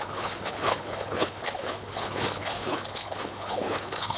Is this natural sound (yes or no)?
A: no